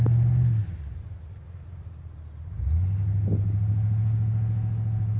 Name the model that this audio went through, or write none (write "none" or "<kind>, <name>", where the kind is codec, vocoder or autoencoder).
none